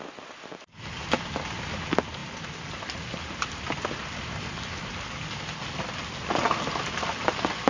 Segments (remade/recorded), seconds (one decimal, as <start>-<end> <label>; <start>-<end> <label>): 0.0-7.7 recorded

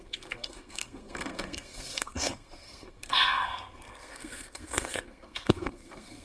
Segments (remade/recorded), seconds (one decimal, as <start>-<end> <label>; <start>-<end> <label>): 0.0-6.2 remade

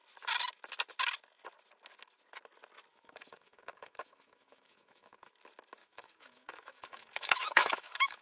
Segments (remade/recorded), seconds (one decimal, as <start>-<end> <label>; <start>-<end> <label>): 0.0-2.9 recorded; 2.9-5.3 remade; 5.3-5.8 recorded; 5.8-8.2 remade